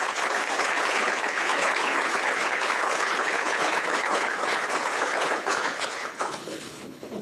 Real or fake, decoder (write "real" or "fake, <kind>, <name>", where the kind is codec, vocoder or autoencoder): fake, codec, HILCodec